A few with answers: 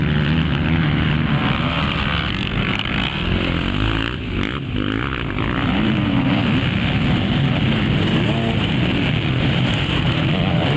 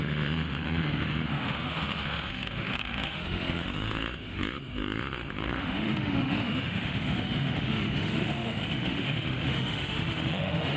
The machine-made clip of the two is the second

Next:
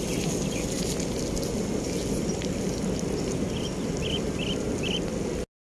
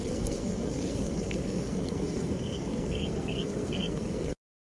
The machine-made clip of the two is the second